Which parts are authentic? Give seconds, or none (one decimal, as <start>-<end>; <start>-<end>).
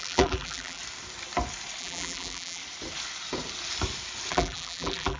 0.8-1.8; 2.6-4.3